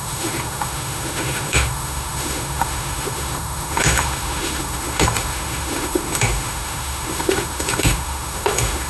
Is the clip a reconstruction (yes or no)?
yes